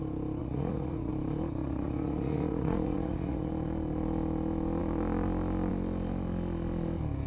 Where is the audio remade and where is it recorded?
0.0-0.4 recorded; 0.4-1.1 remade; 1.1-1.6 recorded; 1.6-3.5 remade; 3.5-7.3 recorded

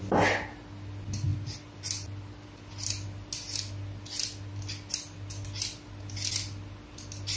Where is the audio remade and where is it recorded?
0.0-7.4 recorded

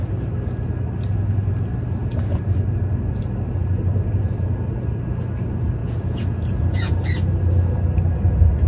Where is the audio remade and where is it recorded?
0.0-5.8 recorded; 5.8-6.9 remade; 6.9-8.7 recorded

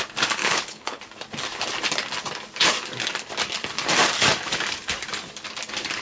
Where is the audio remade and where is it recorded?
0.0-0.4 recorded; 0.4-1.0 remade; 1.0-6.0 recorded